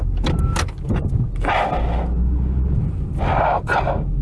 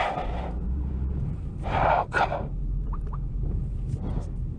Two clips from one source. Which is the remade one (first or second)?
second